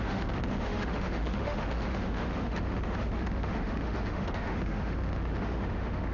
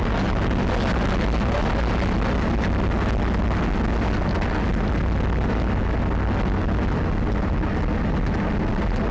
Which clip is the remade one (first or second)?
first